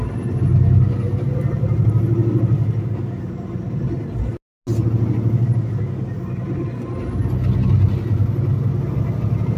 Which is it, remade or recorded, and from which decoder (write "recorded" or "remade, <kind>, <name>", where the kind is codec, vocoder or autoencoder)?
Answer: recorded